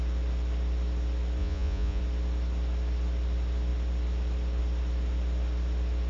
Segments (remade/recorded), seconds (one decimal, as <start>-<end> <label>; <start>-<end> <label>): 0.0-1.4 recorded; 1.4-2.0 remade; 2.0-6.1 recorded